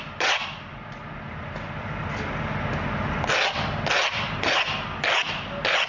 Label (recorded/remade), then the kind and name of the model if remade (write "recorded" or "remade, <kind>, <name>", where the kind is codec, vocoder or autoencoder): recorded